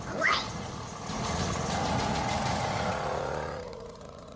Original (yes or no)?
no